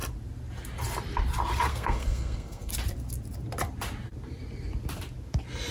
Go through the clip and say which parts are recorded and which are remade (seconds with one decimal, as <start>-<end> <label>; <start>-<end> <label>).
0.0-1.7 recorded; 1.7-2.7 remade; 2.7-5.7 recorded